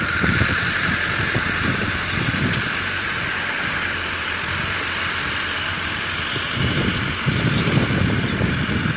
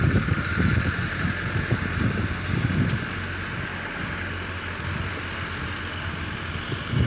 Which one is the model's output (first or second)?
first